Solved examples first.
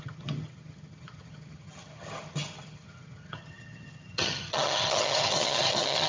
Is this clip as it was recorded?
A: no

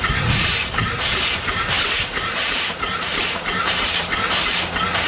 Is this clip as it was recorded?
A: no